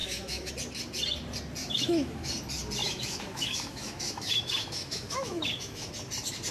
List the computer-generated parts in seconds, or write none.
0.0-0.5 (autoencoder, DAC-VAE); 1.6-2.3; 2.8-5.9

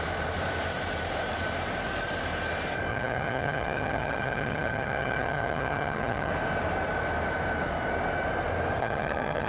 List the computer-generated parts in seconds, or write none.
2.9-6.3 (vocoder, HiFi-GAN); 8.8-9.5

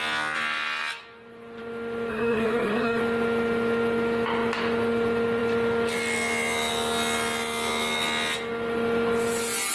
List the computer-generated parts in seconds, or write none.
2.1-3.0 (codec, SNAC)

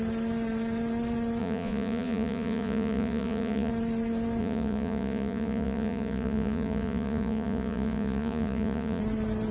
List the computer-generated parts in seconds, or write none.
1.4-3.7 (vocoder, Vocos); 4.4-9.0